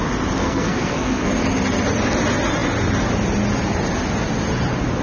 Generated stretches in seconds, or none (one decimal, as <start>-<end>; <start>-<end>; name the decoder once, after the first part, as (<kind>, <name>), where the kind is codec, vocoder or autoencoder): 0.4-1.3 (codec, SNAC)